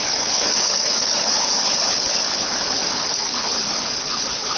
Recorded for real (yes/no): no